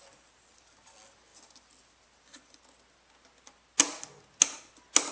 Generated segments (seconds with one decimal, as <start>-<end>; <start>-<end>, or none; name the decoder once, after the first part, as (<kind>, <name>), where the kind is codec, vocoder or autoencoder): none